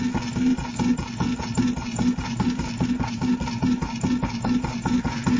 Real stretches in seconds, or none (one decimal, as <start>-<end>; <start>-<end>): 0.0-5.4